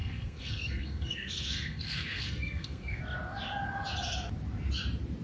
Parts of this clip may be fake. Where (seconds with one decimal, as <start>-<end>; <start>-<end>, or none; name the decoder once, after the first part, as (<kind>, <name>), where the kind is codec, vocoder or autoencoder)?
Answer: 0.0-3.0 (codec, SNAC)